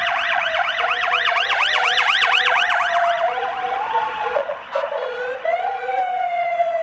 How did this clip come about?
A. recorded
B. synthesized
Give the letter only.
B